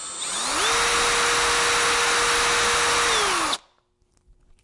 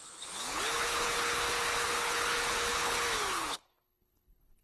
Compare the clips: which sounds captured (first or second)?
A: first